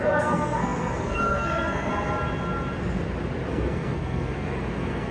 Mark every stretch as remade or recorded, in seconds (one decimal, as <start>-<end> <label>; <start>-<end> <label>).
0.0-1.9 remade; 1.9-3.5 recorded; 3.5-5.1 remade